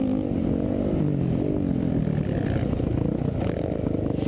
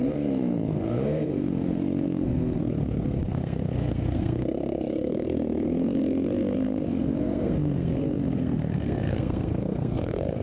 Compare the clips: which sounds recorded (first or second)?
first